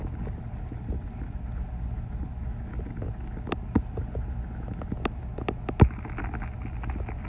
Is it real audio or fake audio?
real